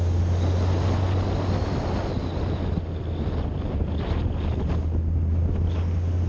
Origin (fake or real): real